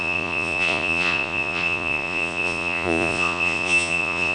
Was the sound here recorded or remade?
remade